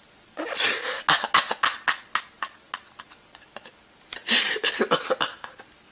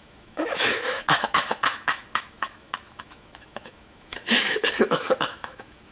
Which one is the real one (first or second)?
first